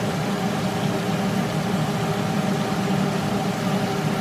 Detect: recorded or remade recorded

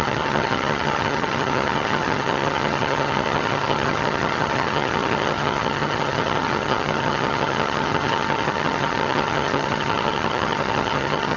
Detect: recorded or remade remade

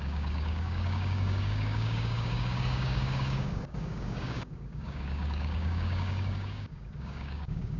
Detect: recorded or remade remade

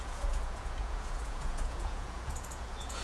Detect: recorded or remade remade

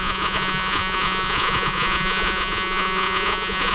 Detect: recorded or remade remade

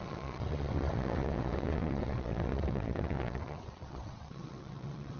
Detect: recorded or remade remade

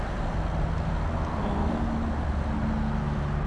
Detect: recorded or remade recorded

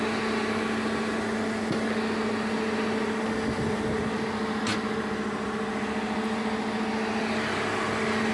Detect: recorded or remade recorded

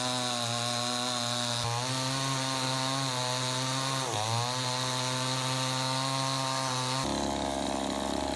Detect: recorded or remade recorded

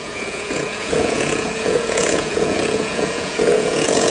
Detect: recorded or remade remade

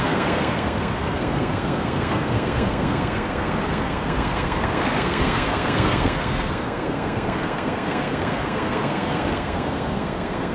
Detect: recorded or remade remade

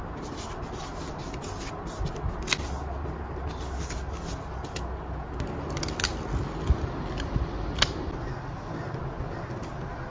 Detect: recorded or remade recorded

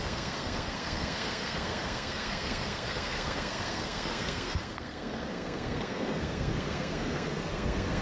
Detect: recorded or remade remade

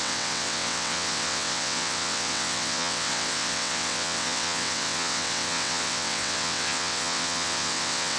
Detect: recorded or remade remade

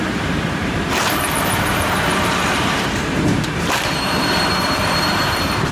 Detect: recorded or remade remade